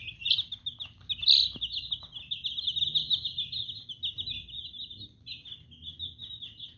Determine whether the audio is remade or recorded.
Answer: recorded